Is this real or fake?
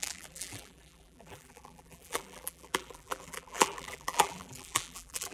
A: fake